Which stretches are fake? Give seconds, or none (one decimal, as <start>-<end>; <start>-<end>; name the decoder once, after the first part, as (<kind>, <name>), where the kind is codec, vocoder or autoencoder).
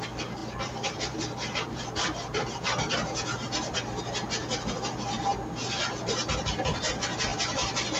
0.4-2.9 (vocoder, BigVGAN v2); 5.3-6.5; 7.3-8.0